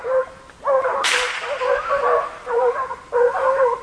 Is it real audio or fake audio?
real